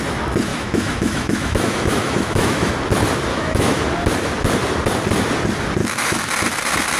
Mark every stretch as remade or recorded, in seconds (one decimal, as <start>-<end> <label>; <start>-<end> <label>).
0.0-0.5 recorded; 0.5-2.7 remade; 2.7-3.3 recorded; 3.3-3.8 remade; 3.8-5.8 recorded; 5.8-6.3 remade; 6.3-7.0 recorded